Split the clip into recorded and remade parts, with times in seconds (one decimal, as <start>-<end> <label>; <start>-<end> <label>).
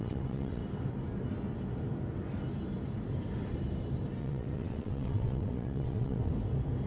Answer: 0.0-0.6 remade; 0.6-4.2 recorded; 4.2-6.3 remade; 6.3-6.9 recorded